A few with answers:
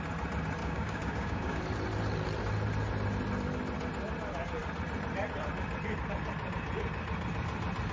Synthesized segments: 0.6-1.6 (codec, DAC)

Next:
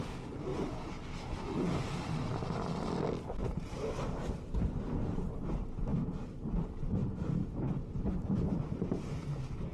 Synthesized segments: 7.0-8.4 (vocoder, BigVGAN v2)

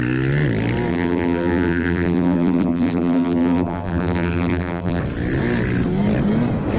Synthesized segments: 0.9-5.0 (vocoder, BigVGAN v2)

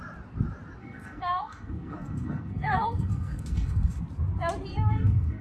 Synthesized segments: 0.8-4.0 (codec, SNAC); 4.7-5.4

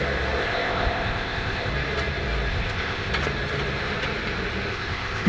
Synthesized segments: 0.4-1.7 (codec, ZipCodec); 2.5-3.1; 4.7-5.3

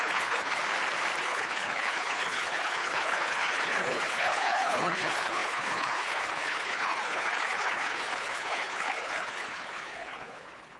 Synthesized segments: 0.0-0.6 (codec, HILCodec); 1.2-10.8

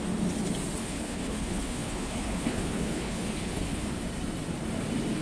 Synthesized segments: 0.8-3.9 (codec, HILCodec)

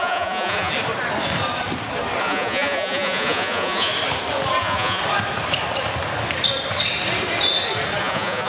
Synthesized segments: 0.0-0.7 (vocoder, Vocos); 2.2-3.9; 4.6-5.0; 8.0-8.5